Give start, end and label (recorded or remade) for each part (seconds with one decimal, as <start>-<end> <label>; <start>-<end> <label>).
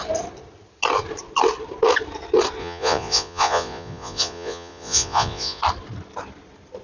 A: 0.0-2.6 recorded; 2.6-5.6 remade; 5.6-6.8 recorded